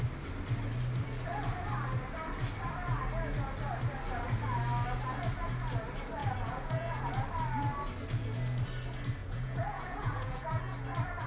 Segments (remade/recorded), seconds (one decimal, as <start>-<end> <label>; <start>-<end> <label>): 0.0-6.2 recorded; 6.2-7.1 remade; 7.1-9.2 recorded; 9.2-10.6 remade; 10.6-11.3 recorded